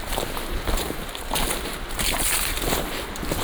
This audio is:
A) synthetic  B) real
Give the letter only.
A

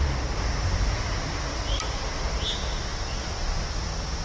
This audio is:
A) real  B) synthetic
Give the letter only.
A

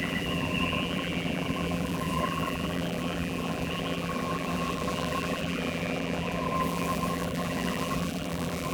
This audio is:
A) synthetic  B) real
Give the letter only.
A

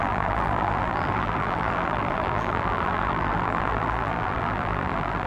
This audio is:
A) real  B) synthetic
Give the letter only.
B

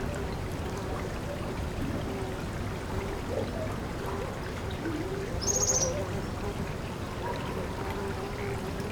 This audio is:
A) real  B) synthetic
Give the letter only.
A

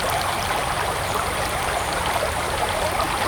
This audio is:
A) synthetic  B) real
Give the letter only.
A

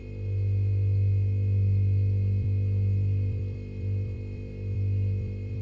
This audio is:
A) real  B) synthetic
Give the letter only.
B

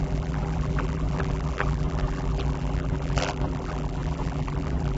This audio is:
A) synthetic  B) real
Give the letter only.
A